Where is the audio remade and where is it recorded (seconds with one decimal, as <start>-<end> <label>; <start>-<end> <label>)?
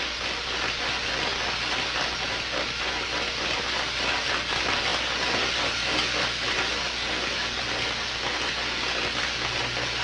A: 0.0-10.0 recorded